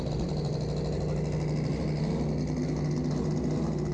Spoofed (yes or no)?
no